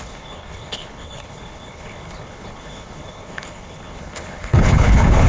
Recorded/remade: remade